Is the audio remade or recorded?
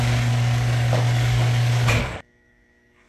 remade